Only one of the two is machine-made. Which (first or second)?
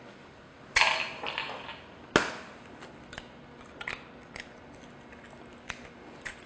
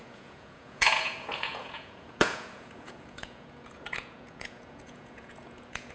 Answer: second